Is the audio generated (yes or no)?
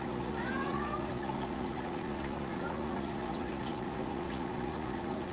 yes